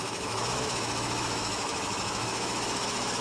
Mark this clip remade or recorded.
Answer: remade